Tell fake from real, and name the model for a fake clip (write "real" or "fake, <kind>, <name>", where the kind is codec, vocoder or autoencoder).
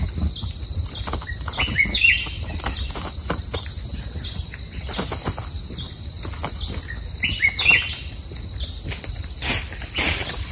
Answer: real